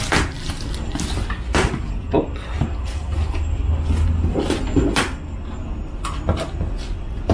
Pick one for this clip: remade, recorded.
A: recorded